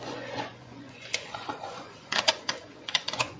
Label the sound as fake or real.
fake